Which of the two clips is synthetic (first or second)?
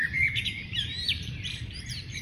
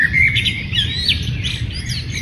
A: first